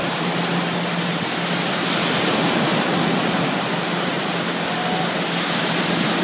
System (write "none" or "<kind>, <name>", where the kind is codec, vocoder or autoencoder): none